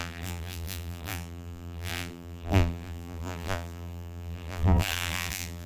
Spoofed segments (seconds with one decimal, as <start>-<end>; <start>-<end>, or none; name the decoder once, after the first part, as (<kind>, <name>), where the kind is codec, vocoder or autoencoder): 0.0-5.7 (vocoder, BigVGAN v2)